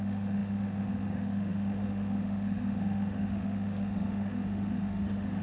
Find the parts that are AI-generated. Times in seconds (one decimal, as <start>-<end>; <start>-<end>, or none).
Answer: 0.0-5.4